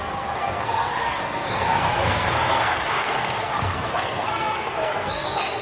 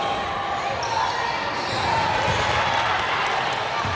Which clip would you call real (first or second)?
second